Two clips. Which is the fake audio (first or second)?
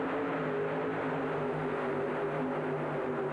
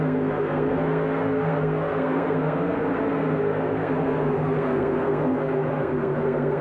second